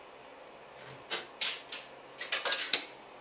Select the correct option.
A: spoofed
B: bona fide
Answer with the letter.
B